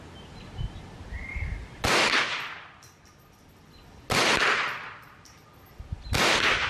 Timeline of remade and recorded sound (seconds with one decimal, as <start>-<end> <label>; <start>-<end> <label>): 0.0-6.7 recorded